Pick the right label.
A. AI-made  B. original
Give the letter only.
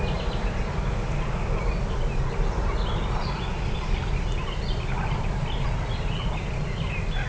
B